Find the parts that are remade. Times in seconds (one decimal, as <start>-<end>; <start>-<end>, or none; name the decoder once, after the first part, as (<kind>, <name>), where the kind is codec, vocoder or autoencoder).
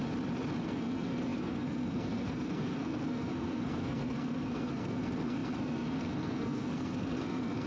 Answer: 0.6-7.7 (codec, SNAC)